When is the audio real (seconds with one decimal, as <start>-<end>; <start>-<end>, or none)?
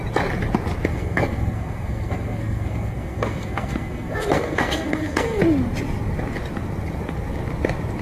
0.0-0.9; 5.4-8.0